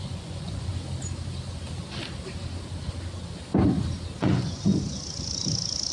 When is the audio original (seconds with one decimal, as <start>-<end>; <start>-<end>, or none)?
0.7-4.2; 4.7-5.9